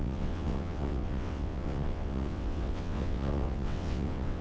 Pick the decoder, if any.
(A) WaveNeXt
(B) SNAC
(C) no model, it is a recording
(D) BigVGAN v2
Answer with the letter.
A